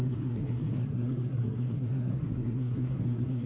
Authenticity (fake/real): fake